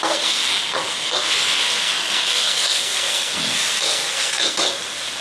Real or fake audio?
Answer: fake